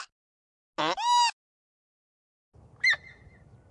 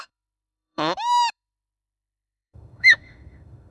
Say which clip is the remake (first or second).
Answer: second